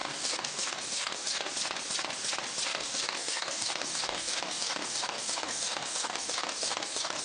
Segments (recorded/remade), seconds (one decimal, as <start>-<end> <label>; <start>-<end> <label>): 0.0-1.5 remade; 1.5-2.7 recorded; 2.7-7.2 remade